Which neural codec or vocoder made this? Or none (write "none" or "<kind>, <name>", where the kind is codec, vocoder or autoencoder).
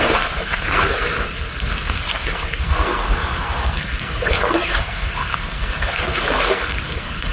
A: codec, SNAC